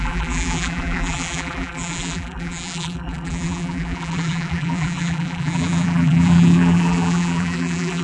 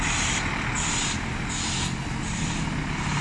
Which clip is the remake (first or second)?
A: first